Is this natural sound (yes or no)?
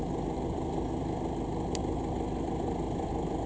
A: yes